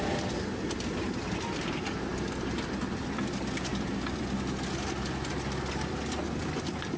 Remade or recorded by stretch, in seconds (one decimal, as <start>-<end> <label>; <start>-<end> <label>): 0.0-7.0 recorded